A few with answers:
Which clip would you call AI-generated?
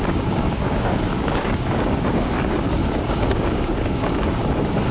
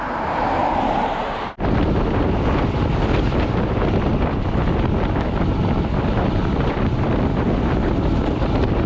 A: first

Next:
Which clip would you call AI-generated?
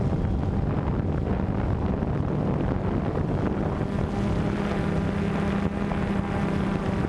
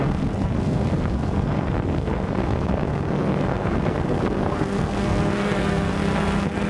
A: second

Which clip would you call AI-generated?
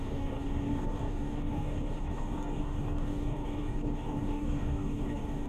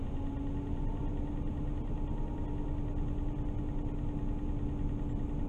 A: first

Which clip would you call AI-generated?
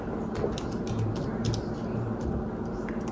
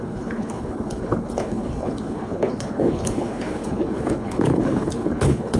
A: second